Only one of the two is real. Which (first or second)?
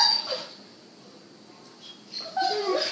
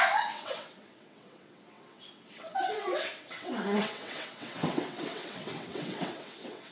first